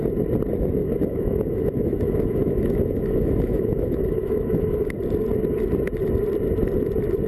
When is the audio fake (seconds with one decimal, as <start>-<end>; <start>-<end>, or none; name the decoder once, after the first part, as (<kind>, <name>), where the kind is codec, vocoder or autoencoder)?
0.8-4.9 (autoencoder, DAC-VAE)